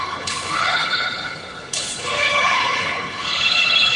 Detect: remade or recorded remade